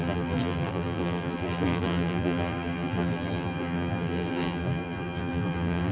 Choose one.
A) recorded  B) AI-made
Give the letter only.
B